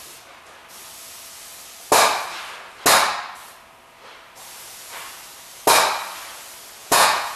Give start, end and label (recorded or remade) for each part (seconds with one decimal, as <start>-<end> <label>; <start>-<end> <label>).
0.0-6.8 recorded; 6.8-7.4 remade